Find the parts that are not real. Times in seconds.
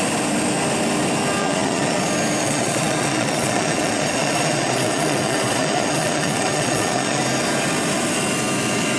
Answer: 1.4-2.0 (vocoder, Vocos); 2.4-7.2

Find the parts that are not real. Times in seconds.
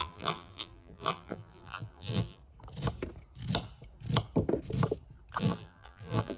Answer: 0.0-2.4 (vocoder, BigVGAN v2); 5.4-6.4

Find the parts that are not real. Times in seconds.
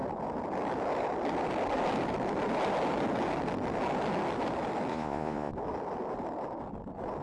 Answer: 4.9-5.5 (vocoder, Vocos)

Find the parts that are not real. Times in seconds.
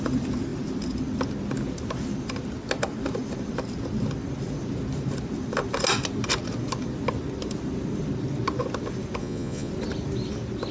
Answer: 9.2-9.7 (vocoder, Vocos)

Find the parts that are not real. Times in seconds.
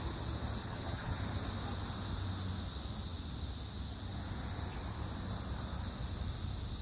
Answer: 0.6-1.2 (vocoder, HiFi-GAN)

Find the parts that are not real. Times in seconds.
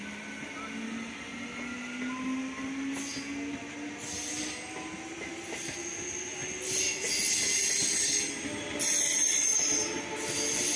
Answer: none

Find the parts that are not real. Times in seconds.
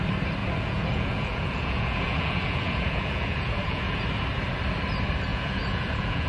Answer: 0.4-4.0 (vocoder, Vocos); 5.3-6.3